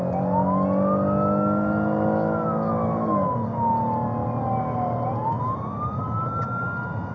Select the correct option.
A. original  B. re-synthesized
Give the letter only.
A